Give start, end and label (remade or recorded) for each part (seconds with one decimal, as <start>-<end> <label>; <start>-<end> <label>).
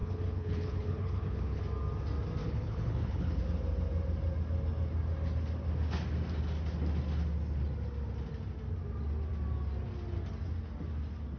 0.0-1.6 remade; 1.6-2.4 recorded; 2.4-3.4 remade; 3.4-11.4 recorded